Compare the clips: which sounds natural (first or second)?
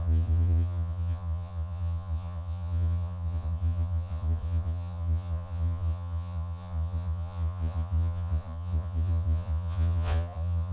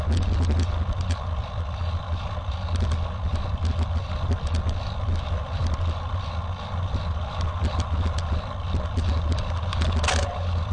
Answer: second